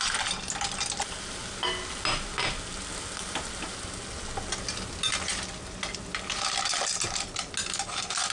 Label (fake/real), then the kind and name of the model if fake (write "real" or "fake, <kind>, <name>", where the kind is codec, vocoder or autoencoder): real